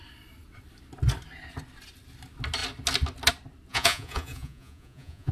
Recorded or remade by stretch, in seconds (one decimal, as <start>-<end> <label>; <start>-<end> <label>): 0.0-3.7 recorded; 3.7-5.3 remade